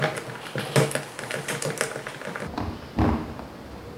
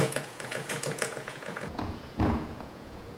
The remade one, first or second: second